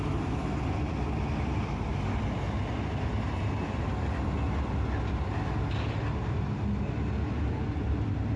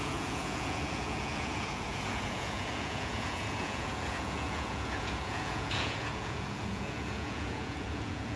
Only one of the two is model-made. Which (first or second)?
second